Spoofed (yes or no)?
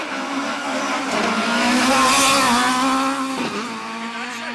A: no